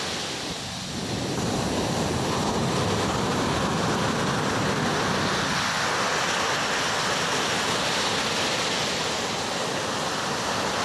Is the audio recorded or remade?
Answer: recorded